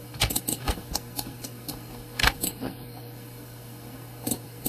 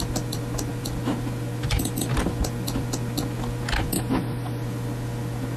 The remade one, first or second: first